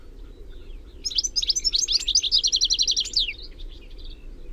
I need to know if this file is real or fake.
real